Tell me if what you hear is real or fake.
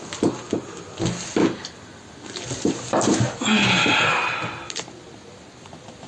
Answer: real